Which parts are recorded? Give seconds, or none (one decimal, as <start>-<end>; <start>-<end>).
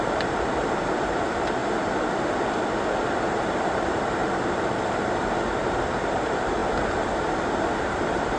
1.6-3.2; 4.2-6.0; 6.6-7.8